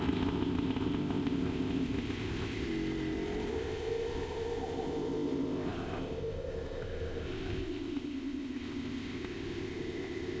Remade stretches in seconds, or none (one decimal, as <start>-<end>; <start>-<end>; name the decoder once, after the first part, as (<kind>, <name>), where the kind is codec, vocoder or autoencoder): 0.0-2.7 (codec, ZipCodec); 3.5-10.4